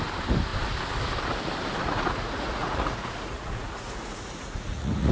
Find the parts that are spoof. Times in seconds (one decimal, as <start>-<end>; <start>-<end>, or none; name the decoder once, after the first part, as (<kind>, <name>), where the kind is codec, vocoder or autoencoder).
1.8-5.1 (vocoder, Vocos)